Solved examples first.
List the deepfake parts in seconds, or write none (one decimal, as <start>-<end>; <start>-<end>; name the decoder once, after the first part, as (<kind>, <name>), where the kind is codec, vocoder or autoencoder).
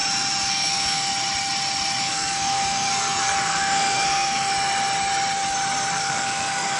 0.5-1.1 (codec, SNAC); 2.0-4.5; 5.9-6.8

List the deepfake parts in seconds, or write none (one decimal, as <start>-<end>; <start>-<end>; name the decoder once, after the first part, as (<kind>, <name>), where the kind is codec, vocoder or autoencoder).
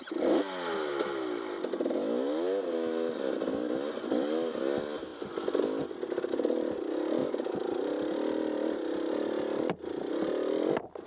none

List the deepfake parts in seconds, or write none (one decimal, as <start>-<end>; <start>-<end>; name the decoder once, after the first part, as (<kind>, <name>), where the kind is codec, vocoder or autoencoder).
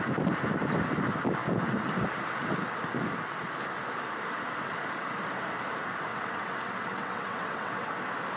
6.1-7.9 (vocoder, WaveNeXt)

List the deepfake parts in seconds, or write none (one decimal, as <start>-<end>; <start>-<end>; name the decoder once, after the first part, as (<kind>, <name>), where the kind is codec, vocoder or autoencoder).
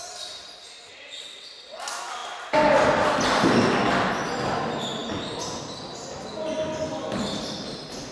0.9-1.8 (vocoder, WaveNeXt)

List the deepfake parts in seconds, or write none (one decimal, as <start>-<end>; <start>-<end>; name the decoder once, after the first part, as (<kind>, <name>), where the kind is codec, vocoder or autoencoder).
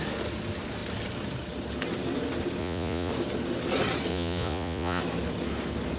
2.6-3.1 (vocoder, Vocos); 4.1-5.0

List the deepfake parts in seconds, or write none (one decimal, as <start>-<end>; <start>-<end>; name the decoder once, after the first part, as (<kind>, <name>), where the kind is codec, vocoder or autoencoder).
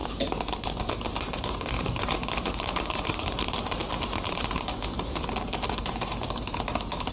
none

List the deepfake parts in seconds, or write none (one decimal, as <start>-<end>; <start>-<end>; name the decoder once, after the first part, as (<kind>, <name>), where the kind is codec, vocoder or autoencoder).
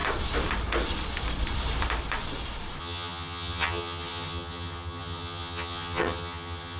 2.8-6.8 (vocoder, HiFi-GAN)